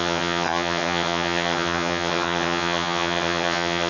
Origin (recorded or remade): remade